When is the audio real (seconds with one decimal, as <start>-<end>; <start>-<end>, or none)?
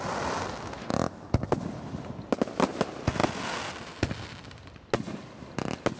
0.0-6.0